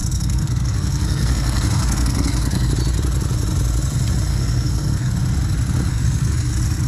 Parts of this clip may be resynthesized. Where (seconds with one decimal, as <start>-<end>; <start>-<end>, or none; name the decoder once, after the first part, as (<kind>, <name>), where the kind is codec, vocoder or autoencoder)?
0.0-2.7 (codec, SNAC); 4.3-5.1; 5.9-6.5